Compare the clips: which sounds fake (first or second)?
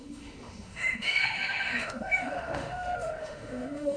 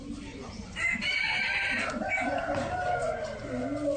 first